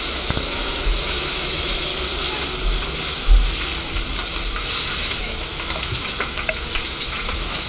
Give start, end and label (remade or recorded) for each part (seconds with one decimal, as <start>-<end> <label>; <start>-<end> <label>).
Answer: 0.0-1.9 remade; 1.9-5.0 recorded; 5.0-7.7 remade